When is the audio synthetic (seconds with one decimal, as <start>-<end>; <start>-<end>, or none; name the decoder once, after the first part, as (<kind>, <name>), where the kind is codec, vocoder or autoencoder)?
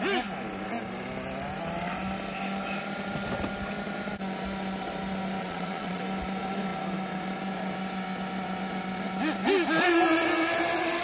5.4-6.0 (vocoder, Vocos)